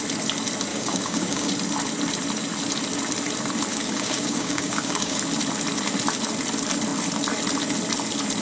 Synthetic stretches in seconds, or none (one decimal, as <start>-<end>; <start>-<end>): 0.7-1.5; 3.7-5.2